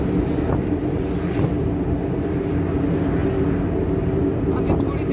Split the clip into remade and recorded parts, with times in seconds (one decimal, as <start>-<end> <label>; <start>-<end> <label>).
0.0-5.1 recorded